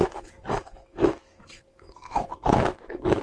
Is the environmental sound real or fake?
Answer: fake